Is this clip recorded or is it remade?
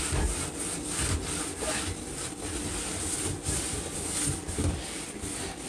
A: recorded